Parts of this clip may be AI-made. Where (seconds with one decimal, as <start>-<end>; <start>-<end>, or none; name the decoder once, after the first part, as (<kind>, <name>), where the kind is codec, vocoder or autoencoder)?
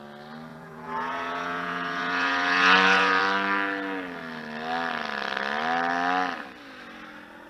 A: 0.5-3.2 (vocoder, Vocos)